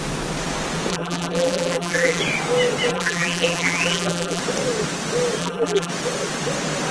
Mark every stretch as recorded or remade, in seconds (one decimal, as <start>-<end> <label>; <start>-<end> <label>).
0.0-0.9 recorded; 0.9-2.2 remade; 2.2-2.9 recorded; 2.9-4.4 remade; 4.4-5.4 recorded; 5.4-5.9 remade; 5.9-6.9 recorded